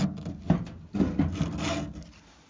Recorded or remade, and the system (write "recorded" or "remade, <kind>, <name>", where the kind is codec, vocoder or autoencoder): recorded